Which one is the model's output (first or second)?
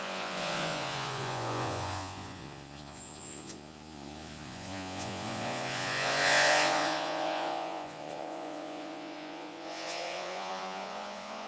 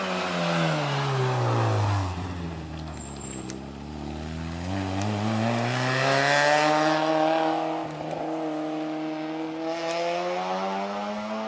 first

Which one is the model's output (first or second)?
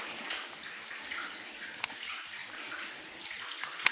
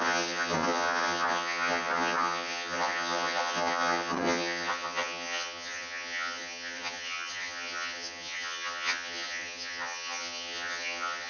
second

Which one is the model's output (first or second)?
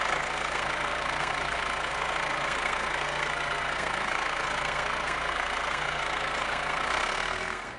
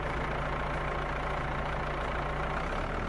first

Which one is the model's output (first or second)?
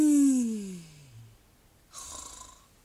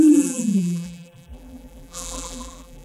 second